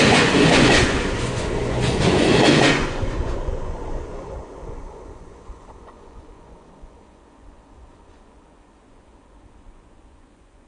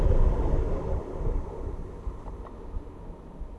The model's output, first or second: first